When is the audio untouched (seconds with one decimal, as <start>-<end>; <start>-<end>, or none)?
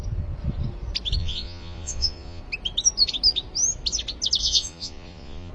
0.0-1.2; 2.4-4.4